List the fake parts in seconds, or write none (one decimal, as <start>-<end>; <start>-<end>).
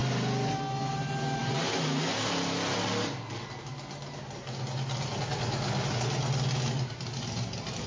none